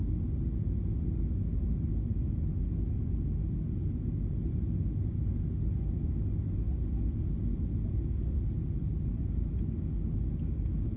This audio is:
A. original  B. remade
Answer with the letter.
A